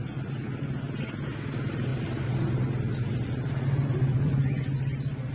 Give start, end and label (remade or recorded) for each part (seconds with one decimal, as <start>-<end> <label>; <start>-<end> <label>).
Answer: 0.0-1.9 recorded; 1.9-4.6 remade; 4.6-5.3 recorded